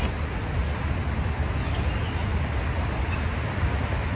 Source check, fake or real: real